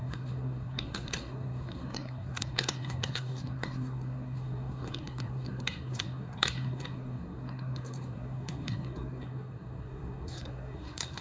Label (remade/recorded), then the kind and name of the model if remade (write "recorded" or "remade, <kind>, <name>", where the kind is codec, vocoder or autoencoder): remade, codec, SNAC